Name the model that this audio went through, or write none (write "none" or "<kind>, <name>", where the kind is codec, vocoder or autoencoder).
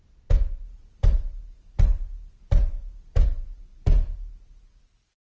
none